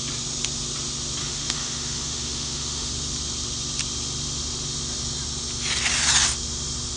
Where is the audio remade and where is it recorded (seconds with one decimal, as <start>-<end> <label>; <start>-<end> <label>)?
0.0-1.2 recorded; 1.2-2.9 remade; 2.9-7.0 recorded